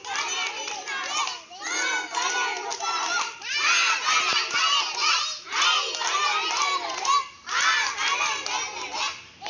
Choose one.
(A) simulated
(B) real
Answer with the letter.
B